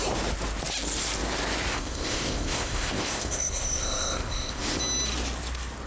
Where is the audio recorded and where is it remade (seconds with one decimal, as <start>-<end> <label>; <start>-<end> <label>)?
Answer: 0.0-1.7 recorded; 1.7-4.8 remade; 4.8-5.9 recorded